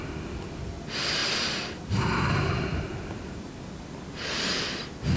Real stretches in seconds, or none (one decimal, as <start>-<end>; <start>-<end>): 0.0-5.2